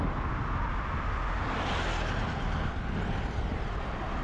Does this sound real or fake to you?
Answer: real